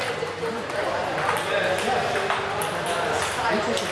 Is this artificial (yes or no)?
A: no